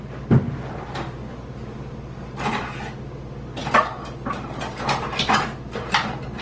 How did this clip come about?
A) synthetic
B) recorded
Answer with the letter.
B